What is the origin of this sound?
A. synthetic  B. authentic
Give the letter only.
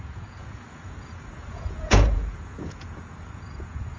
A